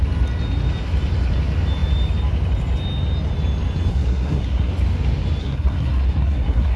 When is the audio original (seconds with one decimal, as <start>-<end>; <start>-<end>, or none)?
0.0-3.9; 4.7-5.4